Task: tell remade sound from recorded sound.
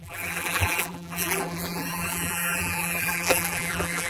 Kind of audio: remade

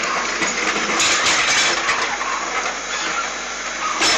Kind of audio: recorded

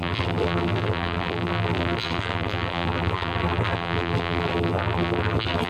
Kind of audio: remade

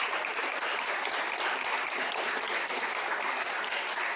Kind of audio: recorded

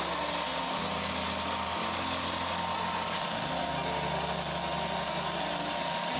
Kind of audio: recorded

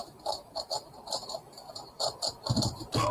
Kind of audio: remade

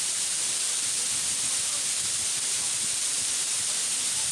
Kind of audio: remade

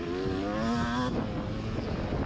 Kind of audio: recorded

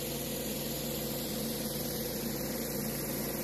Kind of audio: recorded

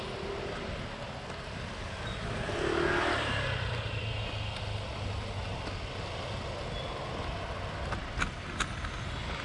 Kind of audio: recorded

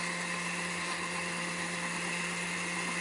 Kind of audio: recorded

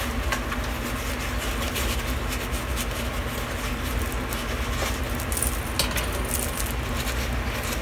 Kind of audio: recorded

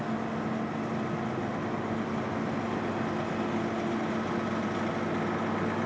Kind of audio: recorded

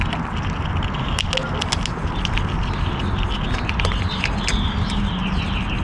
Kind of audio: recorded